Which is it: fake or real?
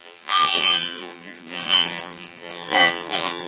fake